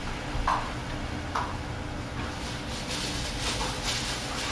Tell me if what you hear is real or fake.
real